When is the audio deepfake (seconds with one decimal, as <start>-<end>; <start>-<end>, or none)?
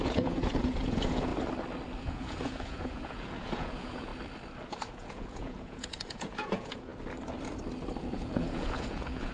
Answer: 0.0-1.3; 2.0-4.1; 4.9-6.9; 8.0-9.3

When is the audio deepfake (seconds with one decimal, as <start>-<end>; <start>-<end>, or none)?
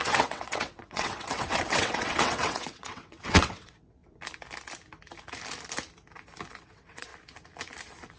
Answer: 0.0-4.0; 6.6-7.1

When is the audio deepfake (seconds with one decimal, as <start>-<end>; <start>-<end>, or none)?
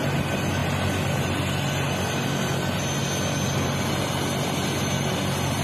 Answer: none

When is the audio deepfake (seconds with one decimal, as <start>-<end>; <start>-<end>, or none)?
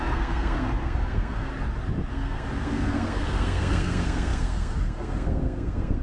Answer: 0.0-1.5; 2.1-6.0